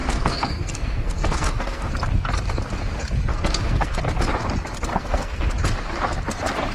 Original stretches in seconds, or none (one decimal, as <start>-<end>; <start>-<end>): 1.9-3.3; 4.0-4.9; 5.5-6.7